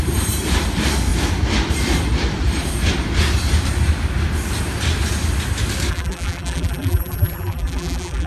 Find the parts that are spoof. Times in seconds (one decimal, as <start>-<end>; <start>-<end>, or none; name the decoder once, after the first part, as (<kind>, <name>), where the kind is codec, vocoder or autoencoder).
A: 5.9-8.3 (vocoder, BigVGAN v2)